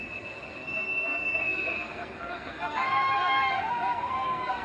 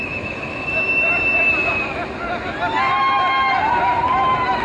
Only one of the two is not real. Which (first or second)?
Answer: first